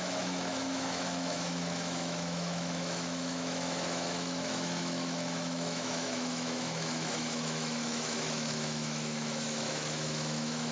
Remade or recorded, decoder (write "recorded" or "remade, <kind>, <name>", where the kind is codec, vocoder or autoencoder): remade, autoencoder, DAC-VAE